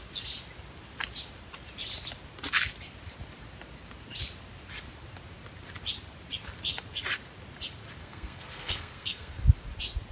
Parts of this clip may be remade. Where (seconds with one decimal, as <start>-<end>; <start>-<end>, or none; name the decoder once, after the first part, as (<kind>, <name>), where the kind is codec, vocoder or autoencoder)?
8.0-9.4 (codec, SNAC)